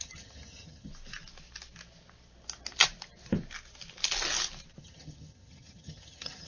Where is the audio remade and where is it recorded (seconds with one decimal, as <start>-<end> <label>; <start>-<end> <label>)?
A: 0.0-0.9 remade; 0.9-4.8 recorded; 4.8-6.5 remade